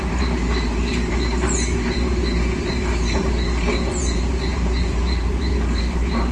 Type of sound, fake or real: fake